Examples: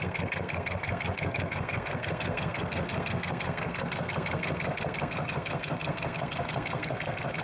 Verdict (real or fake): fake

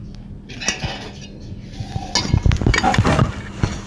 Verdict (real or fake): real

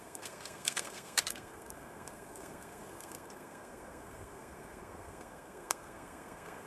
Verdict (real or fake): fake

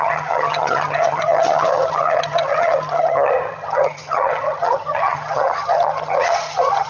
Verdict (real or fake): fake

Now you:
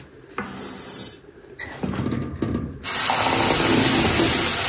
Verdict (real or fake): real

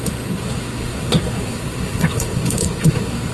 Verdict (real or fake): fake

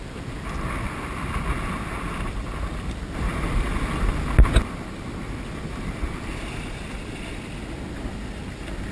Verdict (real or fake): real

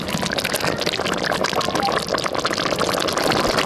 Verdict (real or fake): real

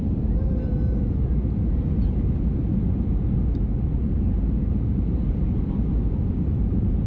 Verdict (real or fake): fake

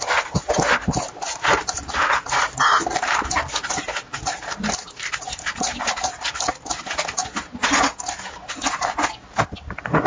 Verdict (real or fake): real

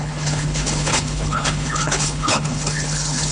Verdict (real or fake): fake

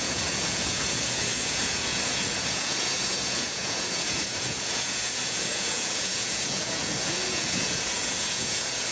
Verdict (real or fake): fake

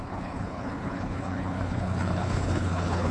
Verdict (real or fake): fake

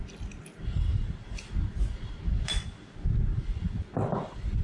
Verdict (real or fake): real